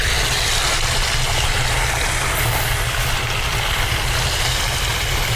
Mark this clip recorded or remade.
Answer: recorded